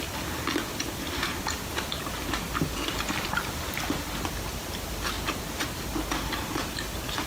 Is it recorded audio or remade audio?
recorded